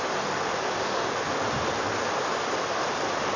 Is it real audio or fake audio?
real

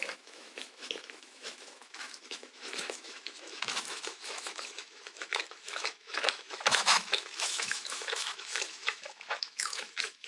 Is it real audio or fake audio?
fake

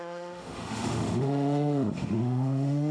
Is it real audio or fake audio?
fake